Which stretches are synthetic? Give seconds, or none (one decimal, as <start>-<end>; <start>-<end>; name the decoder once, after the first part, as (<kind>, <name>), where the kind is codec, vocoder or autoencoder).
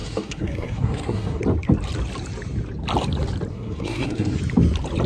0.0-1.4 (codec, SNAC); 3.5-4.4